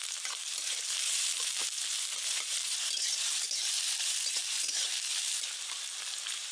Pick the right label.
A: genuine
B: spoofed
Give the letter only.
B